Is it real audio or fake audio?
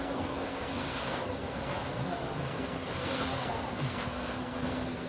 fake